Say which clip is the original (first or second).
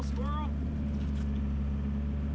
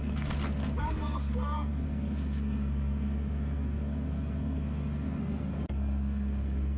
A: first